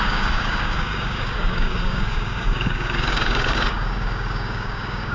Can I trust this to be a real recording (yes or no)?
no